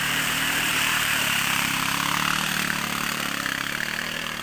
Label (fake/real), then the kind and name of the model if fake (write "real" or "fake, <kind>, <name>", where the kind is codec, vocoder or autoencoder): fake, vocoder, BigVGAN v2